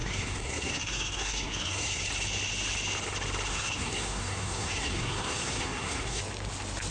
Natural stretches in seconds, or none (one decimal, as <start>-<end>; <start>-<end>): 2.1-3.5; 6.2-6.9